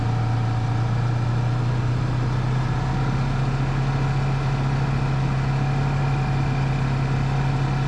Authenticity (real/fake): real